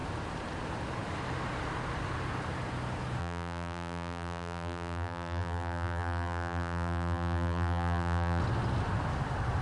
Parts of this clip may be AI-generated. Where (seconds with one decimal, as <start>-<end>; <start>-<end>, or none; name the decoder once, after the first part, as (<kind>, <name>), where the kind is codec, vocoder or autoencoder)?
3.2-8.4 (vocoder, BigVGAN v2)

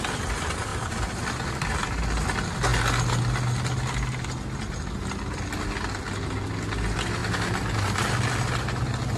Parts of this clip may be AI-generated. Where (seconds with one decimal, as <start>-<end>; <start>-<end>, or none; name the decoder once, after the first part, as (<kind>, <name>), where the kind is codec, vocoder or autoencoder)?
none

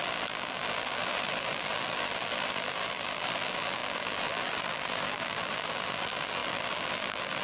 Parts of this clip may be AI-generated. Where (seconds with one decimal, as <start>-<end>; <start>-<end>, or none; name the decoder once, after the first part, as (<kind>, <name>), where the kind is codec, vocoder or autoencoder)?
0.0-7.4 (vocoder, BigVGAN v2)

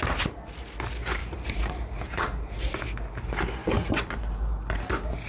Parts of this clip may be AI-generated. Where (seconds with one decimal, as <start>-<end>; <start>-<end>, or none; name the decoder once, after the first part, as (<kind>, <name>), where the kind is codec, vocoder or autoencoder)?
1.2-2.8 (vocoder, BigVGAN v2)

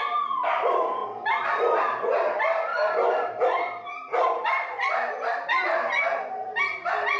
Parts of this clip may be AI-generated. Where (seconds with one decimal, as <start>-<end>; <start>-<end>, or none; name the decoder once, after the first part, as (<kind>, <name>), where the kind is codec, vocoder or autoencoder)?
0.0-1.0 (vocoder, BigVGAN v2); 1.8-6.5

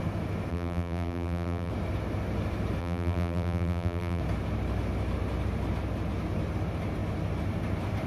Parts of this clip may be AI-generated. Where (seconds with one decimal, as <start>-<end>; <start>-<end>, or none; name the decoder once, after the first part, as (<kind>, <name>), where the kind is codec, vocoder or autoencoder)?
0.5-1.7 (vocoder, BigVGAN v2); 2.8-4.2

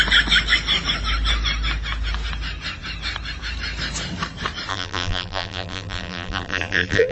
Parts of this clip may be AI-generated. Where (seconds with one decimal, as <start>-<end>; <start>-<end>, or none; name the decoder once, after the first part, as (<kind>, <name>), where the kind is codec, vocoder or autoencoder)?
4.7-7.1 (vocoder, BigVGAN v2)

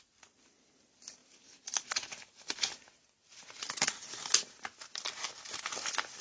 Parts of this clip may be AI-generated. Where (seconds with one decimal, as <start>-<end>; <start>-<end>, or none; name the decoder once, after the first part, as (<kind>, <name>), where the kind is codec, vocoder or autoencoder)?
0.0-1.2 (vocoder, BigVGAN v2); 4.9-6.2